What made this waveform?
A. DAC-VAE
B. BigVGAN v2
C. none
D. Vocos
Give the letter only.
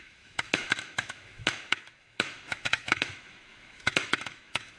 A